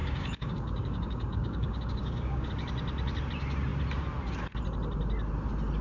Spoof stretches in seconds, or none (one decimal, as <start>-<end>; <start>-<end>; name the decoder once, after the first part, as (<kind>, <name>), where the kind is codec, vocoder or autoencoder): 0.0-2.5 (codec, DAC)